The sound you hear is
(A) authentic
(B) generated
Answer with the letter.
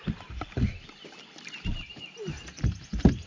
A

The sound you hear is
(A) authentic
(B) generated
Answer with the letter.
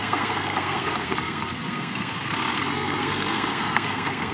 B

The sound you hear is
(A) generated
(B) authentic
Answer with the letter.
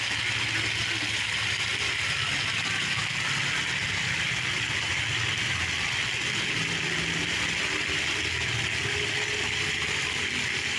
B